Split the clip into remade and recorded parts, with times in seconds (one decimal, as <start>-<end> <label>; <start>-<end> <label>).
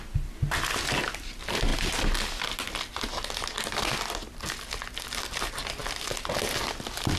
0.0-7.2 recorded